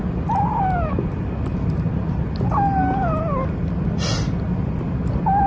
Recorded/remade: recorded